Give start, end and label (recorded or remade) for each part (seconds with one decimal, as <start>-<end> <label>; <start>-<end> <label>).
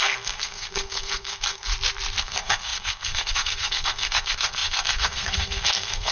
0.0-1.7 remade; 1.7-2.2 recorded; 2.2-6.1 remade